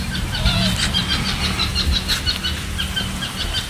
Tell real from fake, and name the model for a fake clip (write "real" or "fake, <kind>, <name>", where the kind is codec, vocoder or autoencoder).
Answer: real